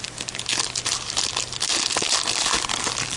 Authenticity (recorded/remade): recorded